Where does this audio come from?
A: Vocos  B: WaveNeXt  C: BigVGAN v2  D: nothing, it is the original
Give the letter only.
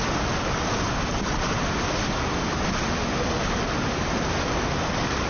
D